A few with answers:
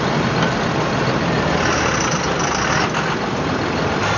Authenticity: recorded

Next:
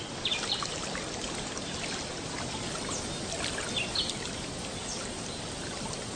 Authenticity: recorded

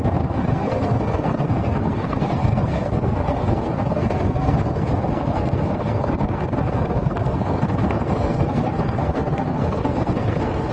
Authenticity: remade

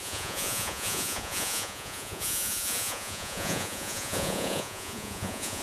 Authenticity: remade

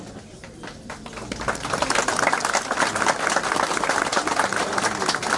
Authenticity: recorded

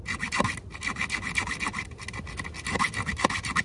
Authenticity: recorded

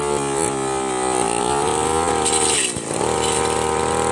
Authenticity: recorded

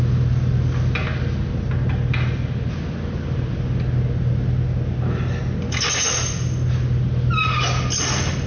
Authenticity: recorded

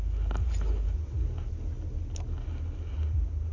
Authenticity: recorded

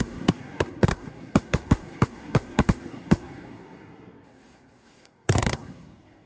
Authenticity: remade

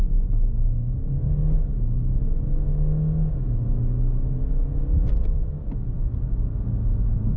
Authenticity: recorded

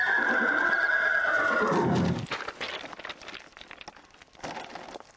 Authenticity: recorded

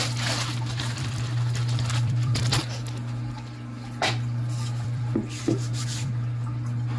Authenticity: remade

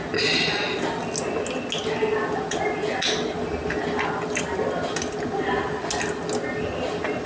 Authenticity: recorded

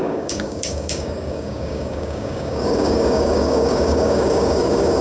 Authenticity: remade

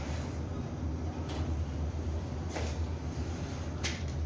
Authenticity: recorded